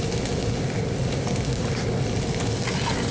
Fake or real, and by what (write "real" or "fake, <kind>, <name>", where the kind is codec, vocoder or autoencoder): real